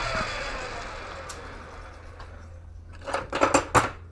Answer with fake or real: real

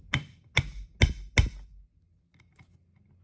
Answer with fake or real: real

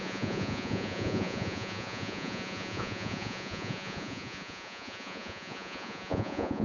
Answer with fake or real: fake